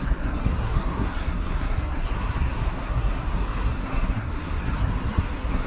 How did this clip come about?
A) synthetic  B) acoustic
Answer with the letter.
A